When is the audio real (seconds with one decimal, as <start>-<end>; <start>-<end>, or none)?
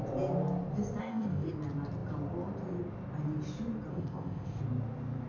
0.0-1.0; 1.5-3.9; 4.6-5.3